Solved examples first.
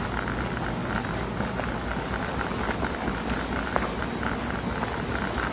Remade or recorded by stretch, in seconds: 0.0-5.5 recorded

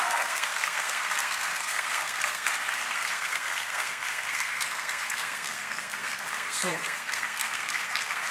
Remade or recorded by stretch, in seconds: 0.0-8.3 remade

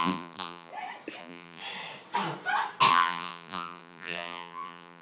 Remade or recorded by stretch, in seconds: 0.0-0.7 remade; 0.7-1.2 recorded; 1.2-1.6 remade; 1.6-2.9 recorded; 2.9-5.0 remade

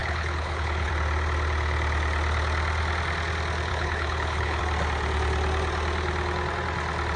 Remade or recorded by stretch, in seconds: 0.0-0.9 remade; 0.9-3.7 recorded; 3.7-4.6 remade; 4.6-7.2 recorded

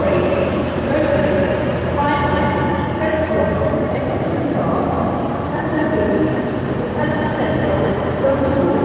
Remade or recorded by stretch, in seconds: 0.0-2.7 recorded; 2.7-3.9 remade; 3.9-8.8 recorded